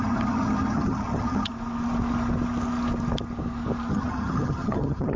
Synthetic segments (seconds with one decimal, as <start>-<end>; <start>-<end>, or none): 0.0-1.5; 3.9-5.2